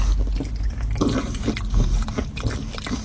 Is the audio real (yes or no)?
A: yes